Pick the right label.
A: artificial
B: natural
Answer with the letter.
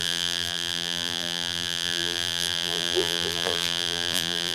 A